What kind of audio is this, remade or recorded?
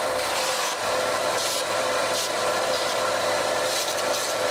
remade